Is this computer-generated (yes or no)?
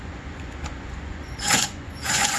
yes